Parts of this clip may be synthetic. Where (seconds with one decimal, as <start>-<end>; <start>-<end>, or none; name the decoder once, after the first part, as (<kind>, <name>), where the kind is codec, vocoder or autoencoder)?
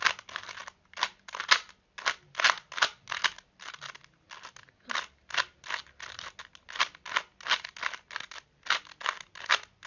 none